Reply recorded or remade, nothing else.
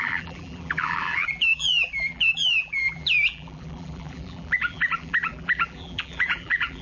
remade